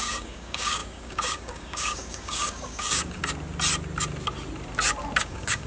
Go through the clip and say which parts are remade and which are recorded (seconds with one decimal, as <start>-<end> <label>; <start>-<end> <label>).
0.0-3.2 remade; 3.2-5.2 recorded; 5.2-5.7 remade